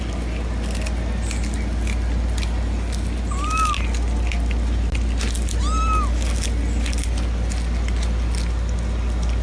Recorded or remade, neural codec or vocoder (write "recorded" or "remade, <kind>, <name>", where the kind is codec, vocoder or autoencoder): recorded